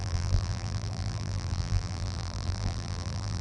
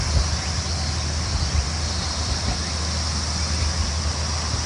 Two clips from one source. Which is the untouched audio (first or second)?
second